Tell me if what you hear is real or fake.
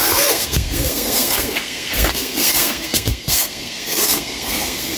fake